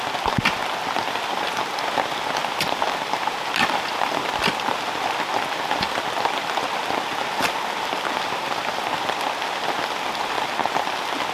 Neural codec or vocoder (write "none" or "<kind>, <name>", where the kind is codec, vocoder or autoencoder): none